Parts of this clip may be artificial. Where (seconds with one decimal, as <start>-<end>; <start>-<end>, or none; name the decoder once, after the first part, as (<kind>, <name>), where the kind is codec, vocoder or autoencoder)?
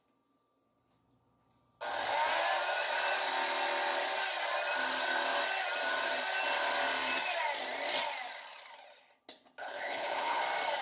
9.6-10.4 (codec, HILCodec)